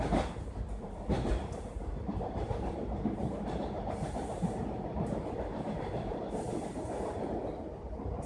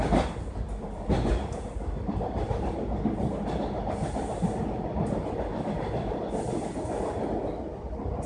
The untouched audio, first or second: second